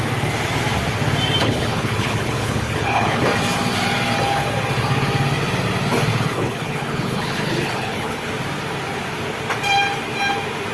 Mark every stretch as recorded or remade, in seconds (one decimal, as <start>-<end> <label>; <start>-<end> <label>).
0.0-1.4 recorded; 1.4-3.2 remade; 3.2-6.1 recorded; 6.1-8.3 remade; 8.3-10.7 recorded